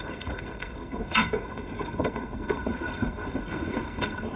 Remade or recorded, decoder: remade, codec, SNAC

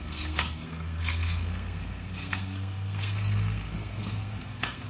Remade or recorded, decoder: remade, codec, SNAC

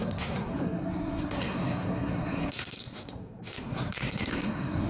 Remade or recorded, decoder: remade, codec, SNAC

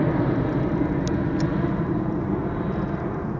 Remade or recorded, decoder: recorded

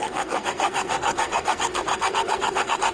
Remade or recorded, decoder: remade, codec, SNAC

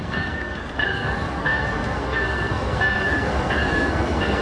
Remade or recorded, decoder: remade, codec, SNAC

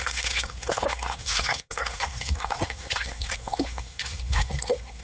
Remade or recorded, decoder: remade, codec, SNAC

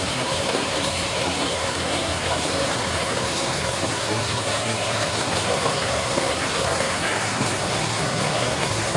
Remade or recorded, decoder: remade, codec, SNAC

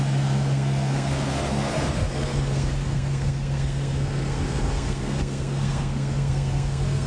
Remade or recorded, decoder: remade, codec, SNAC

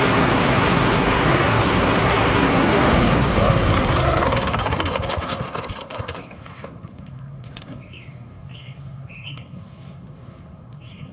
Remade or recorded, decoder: remade, codec, SNAC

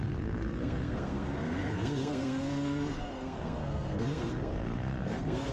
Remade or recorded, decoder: remade, codec, SNAC